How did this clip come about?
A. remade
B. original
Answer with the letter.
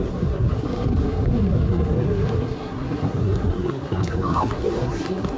A